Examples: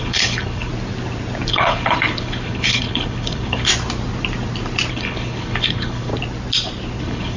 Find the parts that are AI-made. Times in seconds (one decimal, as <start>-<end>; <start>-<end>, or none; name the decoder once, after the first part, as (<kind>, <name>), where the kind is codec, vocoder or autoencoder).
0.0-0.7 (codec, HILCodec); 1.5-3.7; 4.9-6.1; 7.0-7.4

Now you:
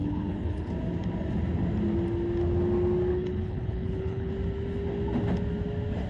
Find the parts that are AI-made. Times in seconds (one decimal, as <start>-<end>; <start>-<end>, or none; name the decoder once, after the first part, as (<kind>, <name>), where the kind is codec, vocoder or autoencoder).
0.0-0.7 (codec, HILCodec); 3.1-4.3

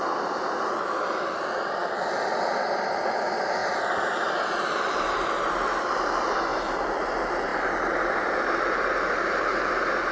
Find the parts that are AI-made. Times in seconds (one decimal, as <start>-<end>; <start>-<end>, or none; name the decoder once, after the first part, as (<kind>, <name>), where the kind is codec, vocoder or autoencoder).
none

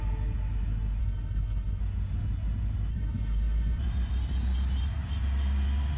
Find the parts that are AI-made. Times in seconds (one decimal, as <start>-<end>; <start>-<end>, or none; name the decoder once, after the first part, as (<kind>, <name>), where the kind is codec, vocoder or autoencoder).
1.0-1.8 (codec, HILCodec); 2.9-3.8